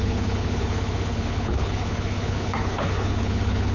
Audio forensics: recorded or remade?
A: remade